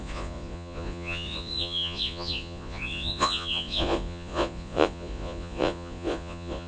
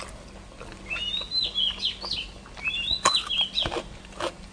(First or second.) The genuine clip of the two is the second